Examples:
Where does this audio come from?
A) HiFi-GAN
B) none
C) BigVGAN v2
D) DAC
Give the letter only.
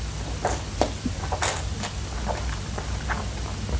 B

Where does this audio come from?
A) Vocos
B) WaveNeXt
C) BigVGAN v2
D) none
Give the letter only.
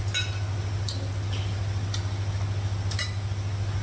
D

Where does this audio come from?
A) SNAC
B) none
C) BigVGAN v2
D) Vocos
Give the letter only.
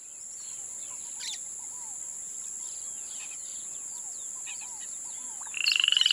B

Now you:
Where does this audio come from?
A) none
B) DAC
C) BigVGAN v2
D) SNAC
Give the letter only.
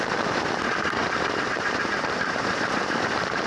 C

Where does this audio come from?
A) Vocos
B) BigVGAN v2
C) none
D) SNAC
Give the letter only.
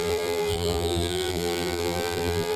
B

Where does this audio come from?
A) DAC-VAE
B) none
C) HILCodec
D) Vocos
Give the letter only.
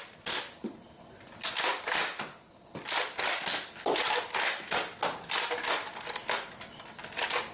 B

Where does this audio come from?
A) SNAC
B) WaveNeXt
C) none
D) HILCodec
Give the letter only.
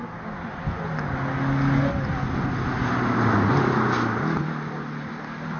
C